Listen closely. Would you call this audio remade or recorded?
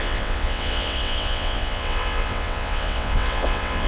remade